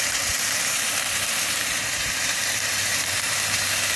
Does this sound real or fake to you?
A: fake